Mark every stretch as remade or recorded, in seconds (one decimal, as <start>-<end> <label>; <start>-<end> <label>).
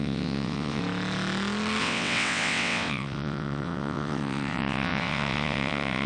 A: 0.0-0.8 remade; 0.8-1.8 recorded; 1.8-6.1 remade